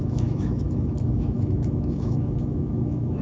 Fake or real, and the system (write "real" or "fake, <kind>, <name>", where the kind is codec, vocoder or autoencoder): fake, autoencoder, DAC-VAE